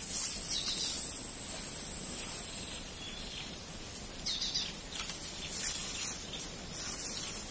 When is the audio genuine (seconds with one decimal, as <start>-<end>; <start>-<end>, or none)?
0.0-7.5